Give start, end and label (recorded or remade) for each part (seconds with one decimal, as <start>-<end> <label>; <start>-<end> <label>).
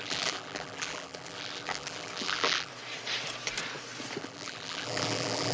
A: 0.0-2.7 remade; 2.7-4.2 recorded; 4.2-5.5 remade